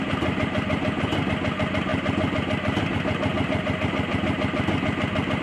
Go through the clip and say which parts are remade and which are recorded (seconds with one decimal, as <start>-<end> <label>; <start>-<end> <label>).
0.0-5.4 recorded